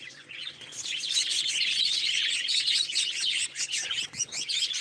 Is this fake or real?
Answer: fake